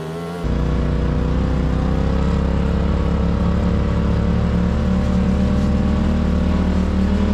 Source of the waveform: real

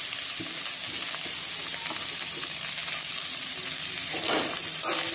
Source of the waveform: real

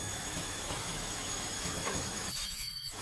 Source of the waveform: fake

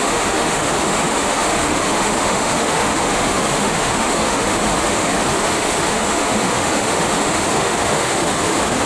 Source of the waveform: fake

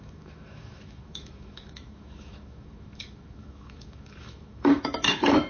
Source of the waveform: fake